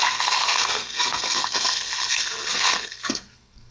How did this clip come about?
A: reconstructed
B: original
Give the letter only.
A